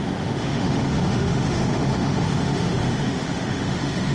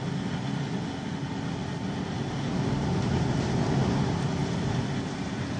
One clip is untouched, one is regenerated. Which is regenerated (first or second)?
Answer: first